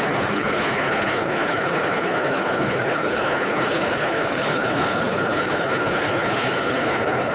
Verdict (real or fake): fake